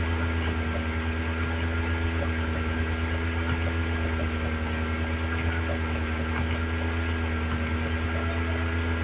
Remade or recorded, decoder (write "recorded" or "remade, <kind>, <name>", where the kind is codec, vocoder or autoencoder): recorded